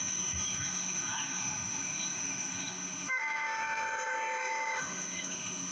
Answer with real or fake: fake